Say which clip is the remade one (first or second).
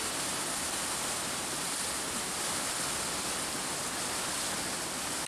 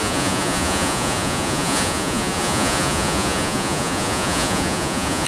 second